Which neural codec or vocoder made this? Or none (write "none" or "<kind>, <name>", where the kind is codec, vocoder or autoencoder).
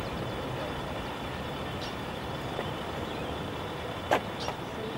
vocoder, BigVGAN v2